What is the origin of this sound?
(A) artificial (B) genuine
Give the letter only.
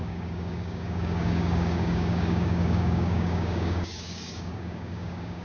A